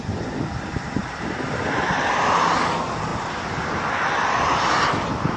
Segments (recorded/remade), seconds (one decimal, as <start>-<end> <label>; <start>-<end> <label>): 0.0-5.4 recorded